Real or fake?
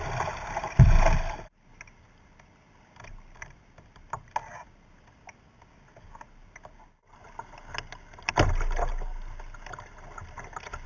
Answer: real